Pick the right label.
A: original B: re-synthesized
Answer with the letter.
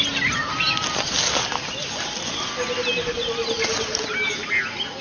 A